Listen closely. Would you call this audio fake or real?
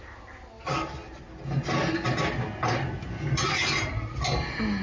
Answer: real